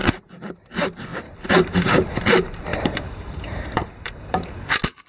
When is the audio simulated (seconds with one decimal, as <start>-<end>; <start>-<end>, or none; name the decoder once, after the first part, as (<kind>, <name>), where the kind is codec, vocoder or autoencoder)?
1.1-2.2 (vocoder, BigVGAN v2); 2.7-4.5